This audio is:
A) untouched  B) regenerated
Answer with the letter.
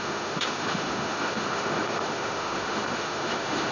B